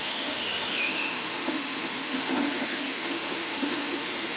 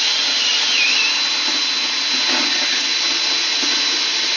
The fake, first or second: first